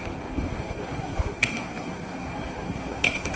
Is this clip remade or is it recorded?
remade